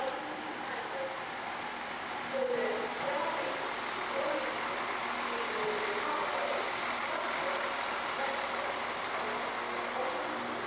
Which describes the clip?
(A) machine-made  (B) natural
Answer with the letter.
B